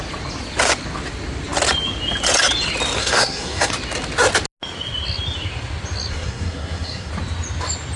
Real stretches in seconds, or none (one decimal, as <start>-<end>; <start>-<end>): 0.0-3.0; 3.7-6.1; 7.1-8.0